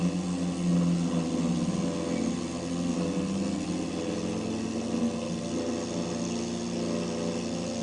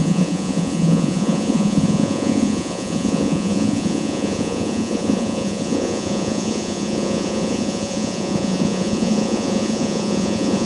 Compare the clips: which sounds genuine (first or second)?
first